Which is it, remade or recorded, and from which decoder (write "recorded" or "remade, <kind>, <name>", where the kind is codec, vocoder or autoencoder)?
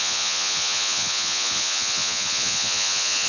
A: remade, vocoder, Vocos